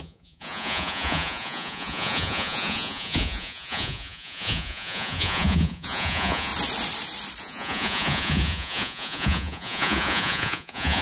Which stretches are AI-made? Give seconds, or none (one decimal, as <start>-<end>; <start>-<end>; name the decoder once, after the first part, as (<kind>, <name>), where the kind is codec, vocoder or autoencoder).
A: 0.0-6.5 (vocoder, Vocos); 7.4-11.0